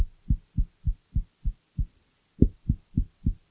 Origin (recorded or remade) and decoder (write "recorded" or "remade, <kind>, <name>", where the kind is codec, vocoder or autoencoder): recorded